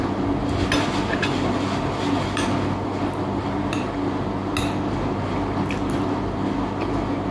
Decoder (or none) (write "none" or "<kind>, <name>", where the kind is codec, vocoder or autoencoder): none